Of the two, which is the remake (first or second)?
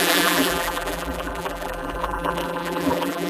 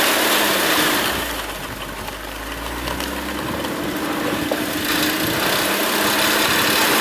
first